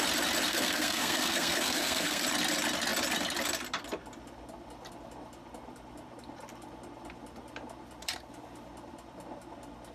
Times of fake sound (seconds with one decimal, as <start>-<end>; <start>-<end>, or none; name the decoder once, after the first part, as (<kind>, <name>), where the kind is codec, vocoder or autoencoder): 0.5-2.2 (codec, SNAC)